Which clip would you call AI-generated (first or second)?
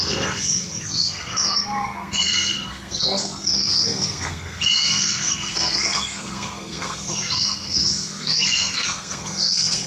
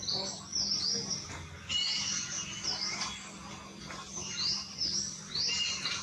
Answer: first